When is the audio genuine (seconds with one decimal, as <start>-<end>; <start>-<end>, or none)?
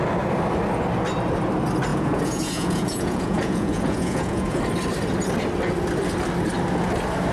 0.0-1.9; 4.6-7.3